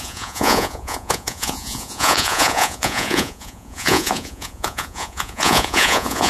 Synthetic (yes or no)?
yes